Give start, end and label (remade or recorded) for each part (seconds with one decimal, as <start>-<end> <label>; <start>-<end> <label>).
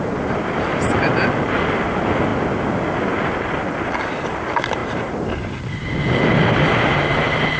0.0-7.6 recorded